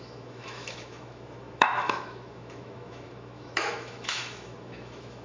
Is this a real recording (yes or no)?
no